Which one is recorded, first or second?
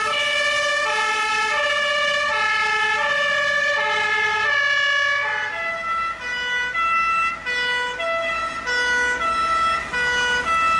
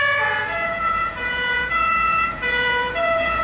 first